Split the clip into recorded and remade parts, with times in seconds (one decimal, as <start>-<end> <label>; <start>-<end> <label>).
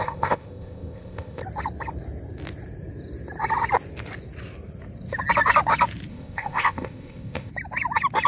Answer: 0.0-1.4 remade; 1.4-6.1 recorded; 6.1-7.5 remade; 7.5-8.3 recorded